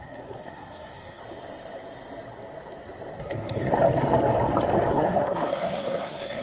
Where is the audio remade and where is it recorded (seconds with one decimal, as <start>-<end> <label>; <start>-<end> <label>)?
0.0-1.2 remade; 1.2-3.2 recorded; 3.2-3.7 remade; 3.7-4.9 recorded; 4.9-6.4 remade